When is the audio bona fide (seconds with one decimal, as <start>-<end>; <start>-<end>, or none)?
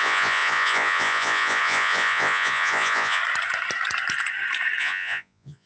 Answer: 3.2-4.8